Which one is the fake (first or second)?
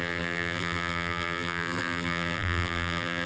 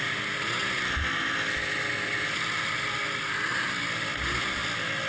first